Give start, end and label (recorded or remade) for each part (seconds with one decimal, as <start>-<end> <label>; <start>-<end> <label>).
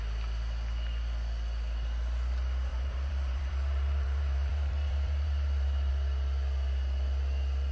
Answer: 0.0-2.7 recorded; 2.7-5.9 remade; 5.9-7.7 recorded